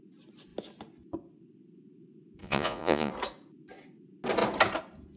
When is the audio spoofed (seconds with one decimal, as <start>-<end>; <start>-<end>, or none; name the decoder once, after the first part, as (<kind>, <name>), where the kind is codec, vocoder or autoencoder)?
2.4-3.1 (vocoder, Vocos)